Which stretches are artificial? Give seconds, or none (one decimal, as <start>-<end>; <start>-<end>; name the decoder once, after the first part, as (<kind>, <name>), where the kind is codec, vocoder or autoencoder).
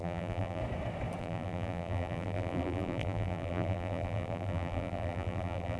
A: 0.0-0.6 (vocoder, BigVGAN v2); 1.2-5.8